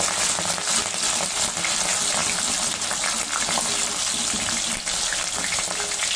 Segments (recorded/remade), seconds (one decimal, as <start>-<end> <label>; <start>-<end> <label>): 0.0-6.2 recorded